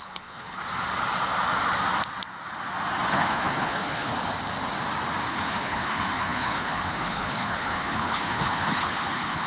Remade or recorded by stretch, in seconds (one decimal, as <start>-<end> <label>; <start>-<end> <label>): 0.0-0.6 remade; 0.6-3.1 recorded; 3.1-4.1 remade; 4.1-5.3 recorded; 5.3-9.5 remade